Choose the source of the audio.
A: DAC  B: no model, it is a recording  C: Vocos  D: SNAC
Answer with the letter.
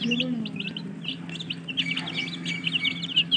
B